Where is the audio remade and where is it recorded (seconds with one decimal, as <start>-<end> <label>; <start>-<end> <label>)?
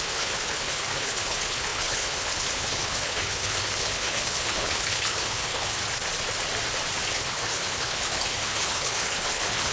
0.0-5.8 remade; 5.8-7.1 recorded; 7.1-9.7 remade